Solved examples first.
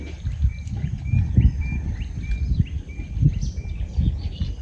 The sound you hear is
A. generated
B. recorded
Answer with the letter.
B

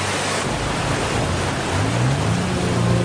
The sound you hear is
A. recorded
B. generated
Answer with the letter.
A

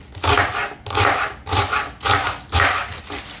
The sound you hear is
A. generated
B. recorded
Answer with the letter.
B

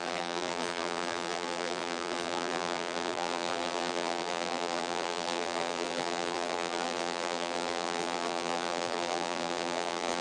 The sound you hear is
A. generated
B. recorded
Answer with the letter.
A